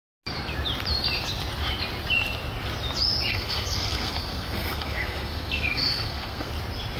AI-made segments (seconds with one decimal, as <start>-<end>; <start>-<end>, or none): 3.3-6.5